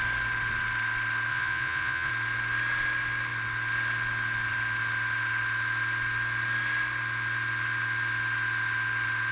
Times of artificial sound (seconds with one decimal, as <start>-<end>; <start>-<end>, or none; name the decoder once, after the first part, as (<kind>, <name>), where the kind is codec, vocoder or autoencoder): 1.3-2.1 (vocoder, Vocos)